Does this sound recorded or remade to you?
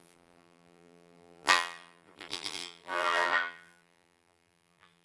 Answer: remade